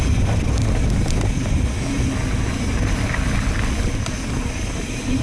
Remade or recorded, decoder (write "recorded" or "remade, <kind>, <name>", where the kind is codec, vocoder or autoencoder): recorded